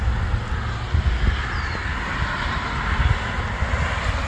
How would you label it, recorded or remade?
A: recorded